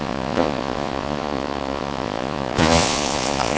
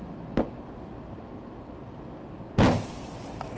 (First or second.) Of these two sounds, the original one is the second